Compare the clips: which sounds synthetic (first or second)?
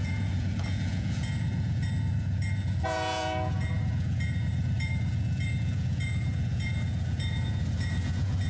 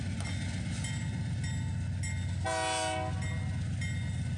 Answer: first